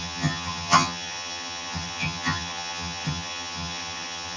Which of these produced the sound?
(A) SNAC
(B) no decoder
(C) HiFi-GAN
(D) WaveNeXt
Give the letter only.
C